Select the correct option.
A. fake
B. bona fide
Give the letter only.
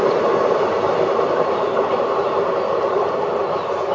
B